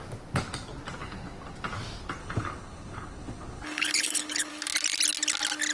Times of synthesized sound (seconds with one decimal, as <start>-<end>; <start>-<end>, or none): 2.2-4.5